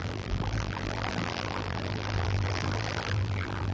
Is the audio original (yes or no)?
no